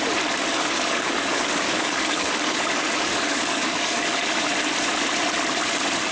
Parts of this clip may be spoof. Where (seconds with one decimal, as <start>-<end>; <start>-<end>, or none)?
0.5-4.2